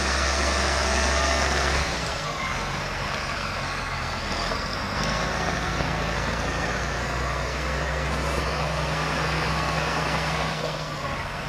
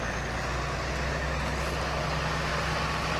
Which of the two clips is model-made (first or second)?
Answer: first